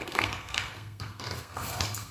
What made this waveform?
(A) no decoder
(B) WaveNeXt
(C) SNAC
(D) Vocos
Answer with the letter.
C